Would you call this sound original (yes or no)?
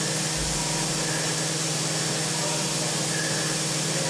yes